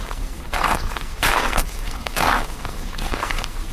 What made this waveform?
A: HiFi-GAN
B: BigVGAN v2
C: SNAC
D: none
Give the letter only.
C